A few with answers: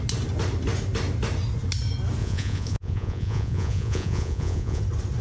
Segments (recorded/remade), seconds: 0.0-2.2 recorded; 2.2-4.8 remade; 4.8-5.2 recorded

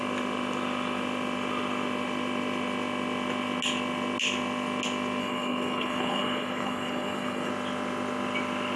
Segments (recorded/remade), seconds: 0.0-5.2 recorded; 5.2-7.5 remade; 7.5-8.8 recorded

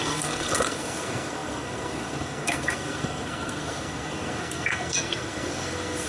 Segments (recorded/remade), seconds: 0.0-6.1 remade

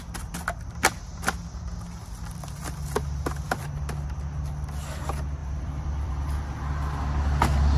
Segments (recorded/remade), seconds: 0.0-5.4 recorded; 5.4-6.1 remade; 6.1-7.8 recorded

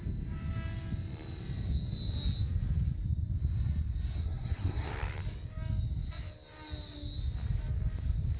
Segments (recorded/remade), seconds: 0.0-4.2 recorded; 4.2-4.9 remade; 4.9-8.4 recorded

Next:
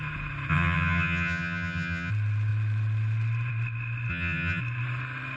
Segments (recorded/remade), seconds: 0.0-0.5 recorded; 0.5-2.1 remade; 2.1-4.1 recorded; 4.1-4.6 remade; 4.6-5.4 recorded

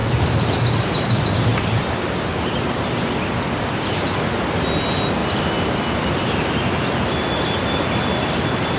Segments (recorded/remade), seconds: 0.0-1.5 recorded; 1.5-3.0 remade; 3.0-5.2 recorded; 5.2-6.4 remade; 6.4-8.8 recorded

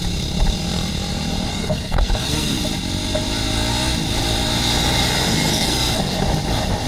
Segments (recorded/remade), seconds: 0.0-1.5 recorded; 1.5-2.6 remade; 2.6-5.5 recorded; 5.5-6.0 remade; 6.0-6.9 recorded